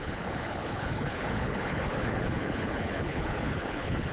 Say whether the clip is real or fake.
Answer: fake